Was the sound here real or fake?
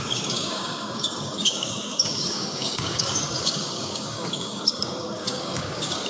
fake